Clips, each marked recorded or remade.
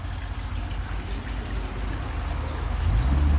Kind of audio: recorded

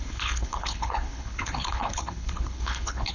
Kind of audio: remade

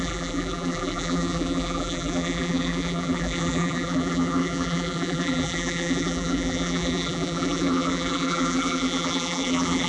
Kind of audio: remade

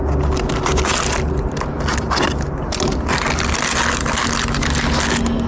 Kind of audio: recorded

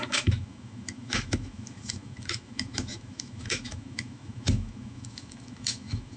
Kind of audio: remade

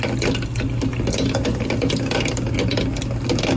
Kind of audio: recorded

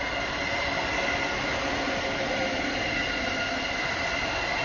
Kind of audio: recorded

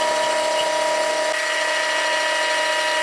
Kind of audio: recorded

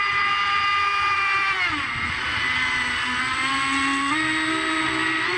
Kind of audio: recorded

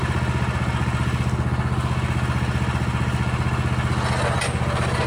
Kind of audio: recorded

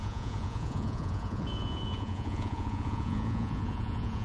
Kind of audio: remade